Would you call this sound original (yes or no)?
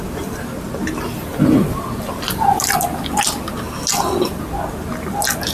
yes